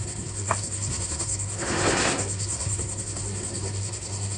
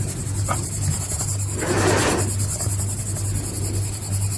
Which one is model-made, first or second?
first